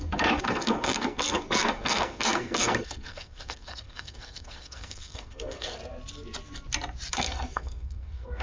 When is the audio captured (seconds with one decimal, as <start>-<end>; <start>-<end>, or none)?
5.8-7.1